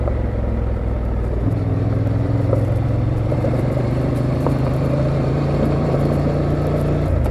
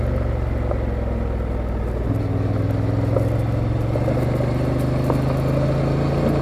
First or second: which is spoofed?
first